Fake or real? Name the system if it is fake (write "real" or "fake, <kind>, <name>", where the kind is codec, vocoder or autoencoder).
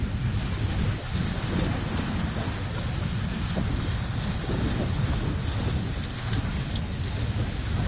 real